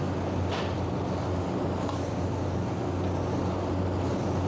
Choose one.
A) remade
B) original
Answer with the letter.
B